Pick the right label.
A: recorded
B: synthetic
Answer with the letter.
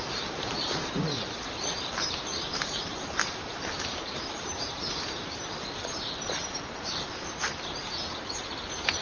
B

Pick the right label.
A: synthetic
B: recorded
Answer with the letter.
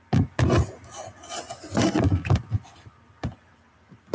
B